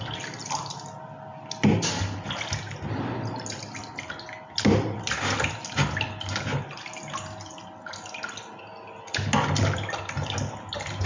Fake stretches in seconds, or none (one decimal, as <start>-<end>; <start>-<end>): none

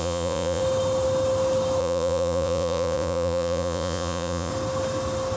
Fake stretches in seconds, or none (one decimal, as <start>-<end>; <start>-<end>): 0.0-0.6; 1.8-4.5

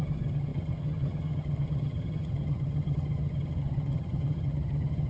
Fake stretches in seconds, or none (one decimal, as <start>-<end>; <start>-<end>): 0.0-5.1

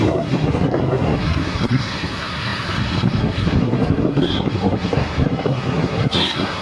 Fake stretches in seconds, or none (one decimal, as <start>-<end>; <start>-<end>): 0.0-6.6

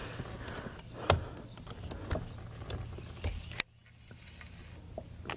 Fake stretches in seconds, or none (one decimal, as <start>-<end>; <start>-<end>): none

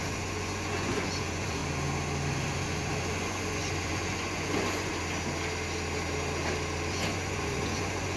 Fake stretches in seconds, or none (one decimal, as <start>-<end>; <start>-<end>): 0.0-1.6; 2.3-4.9; 6.9-8.2